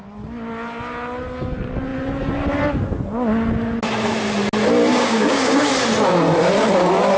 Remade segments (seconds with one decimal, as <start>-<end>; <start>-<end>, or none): 4.9-5.7